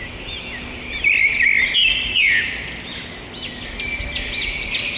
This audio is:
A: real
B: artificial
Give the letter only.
A